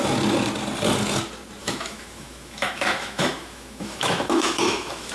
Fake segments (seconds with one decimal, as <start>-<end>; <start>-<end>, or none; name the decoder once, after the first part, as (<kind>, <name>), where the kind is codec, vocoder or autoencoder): 1.6-5.1 (autoencoder, DAC-VAE)

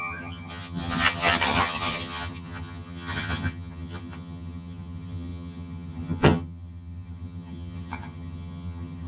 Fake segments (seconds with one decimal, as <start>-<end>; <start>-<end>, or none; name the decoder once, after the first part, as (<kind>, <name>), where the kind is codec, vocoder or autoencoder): 0.0-9.1 (vocoder, HiFi-GAN)

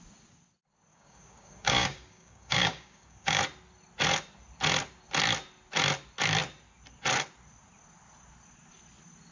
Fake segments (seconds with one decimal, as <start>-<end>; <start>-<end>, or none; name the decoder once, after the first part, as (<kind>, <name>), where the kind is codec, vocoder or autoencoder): 0.9-3.4 (codec, DAC)

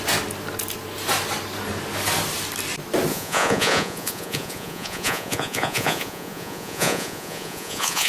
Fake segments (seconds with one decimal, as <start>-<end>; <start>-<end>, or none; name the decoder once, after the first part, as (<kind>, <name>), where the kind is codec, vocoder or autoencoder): 3.1-8.1 (vocoder, Vocos)

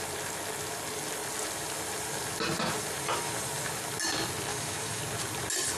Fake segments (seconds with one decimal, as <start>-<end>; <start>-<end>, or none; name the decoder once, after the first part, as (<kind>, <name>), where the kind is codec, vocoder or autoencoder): 4.5-5.0 (autoencoder, DAC-VAE)